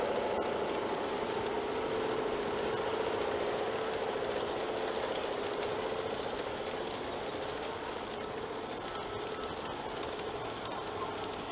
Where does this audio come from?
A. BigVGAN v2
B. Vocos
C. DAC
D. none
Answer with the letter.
D